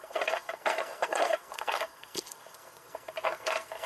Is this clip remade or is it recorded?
remade